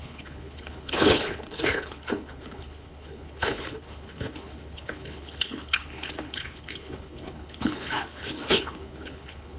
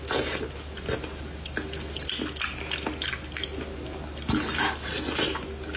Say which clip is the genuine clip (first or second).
second